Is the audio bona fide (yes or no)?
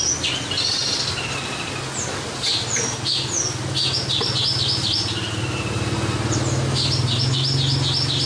yes